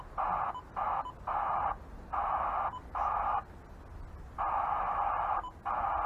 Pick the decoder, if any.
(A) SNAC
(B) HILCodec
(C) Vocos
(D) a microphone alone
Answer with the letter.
D